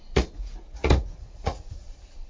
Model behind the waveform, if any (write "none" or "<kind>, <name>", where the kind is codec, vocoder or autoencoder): vocoder, Vocos